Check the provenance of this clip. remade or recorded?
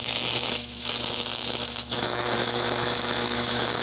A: remade